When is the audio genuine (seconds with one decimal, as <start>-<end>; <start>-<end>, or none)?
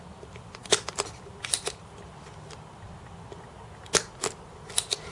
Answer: 0.0-5.1